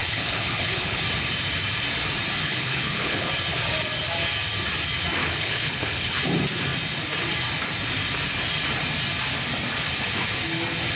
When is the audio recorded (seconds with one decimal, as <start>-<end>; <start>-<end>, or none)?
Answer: 1.0-2.4; 3.3-5.2; 6.2-11.0